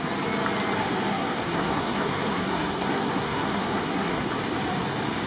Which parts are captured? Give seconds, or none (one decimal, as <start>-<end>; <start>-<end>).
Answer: 0.0-1.1; 4.3-5.3